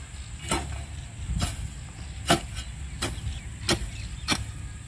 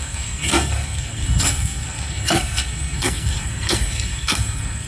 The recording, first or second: first